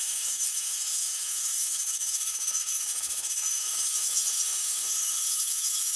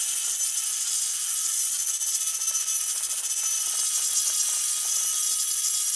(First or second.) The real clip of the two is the second